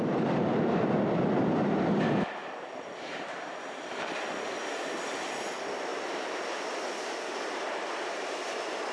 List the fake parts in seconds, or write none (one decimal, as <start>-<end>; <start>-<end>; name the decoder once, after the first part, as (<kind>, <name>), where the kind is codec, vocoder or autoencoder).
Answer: 2.4-3.6 (vocoder, BigVGAN v2); 5.9-6.5